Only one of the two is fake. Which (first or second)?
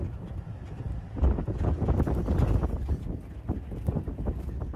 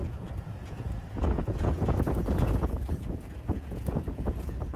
second